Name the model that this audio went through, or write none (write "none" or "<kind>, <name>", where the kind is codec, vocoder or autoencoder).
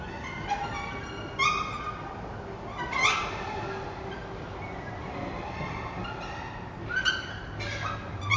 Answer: none